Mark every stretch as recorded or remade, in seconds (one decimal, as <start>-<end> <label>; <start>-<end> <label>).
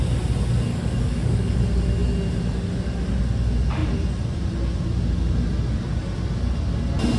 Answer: 0.0-0.7 recorded; 0.7-1.6 remade; 1.6-7.2 recorded